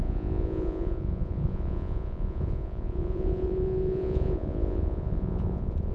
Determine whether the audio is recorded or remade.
remade